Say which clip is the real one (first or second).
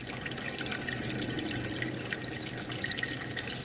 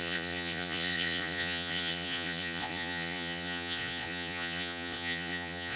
first